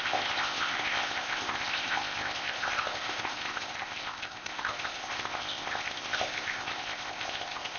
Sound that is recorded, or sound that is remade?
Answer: remade